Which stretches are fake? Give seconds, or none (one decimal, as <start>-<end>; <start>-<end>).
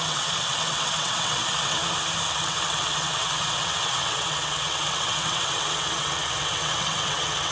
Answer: 0.0-1.8; 2.3-7.5